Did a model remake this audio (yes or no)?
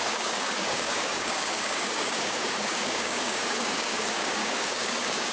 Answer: yes